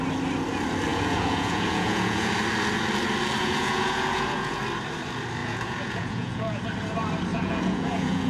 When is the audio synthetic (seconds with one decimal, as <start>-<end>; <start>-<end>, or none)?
0.9-2.3; 3.4-4.6; 5.4-6.6; 7.3-8.3